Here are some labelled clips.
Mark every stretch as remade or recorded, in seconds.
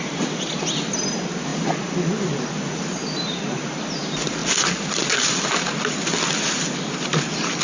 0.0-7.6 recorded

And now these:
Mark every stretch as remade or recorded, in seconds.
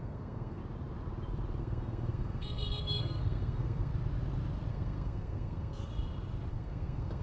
0.0-0.6 remade; 0.6-1.6 recorded; 1.6-3.9 remade; 3.9-4.7 recorded; 4.7-5.9 remade; 5.9-6.5 recorded; 6.5-7.2 remade